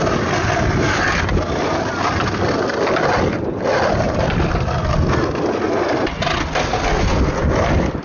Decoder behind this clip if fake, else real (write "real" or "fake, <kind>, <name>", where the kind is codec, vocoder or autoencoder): real